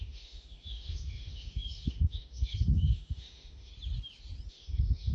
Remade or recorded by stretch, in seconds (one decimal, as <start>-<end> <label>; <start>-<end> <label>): 0.0-3.7 remade; 3.7-4.5 recorded; 4.5-5.1 remade